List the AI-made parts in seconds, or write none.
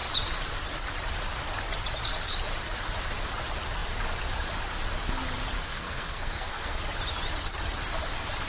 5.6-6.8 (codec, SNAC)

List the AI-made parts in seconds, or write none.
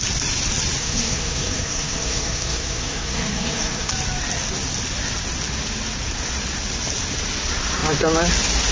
0.8-3.9 (codec, SNAC)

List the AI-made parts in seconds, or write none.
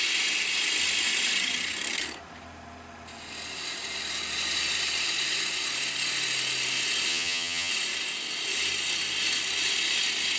7.1-7.7 (vocoder, HiFi-GAN)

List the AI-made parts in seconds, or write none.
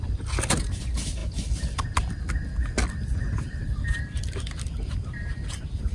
none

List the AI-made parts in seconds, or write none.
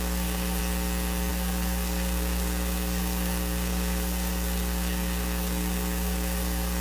0.0-0.6 (codec, SNAC); 1.3-6.8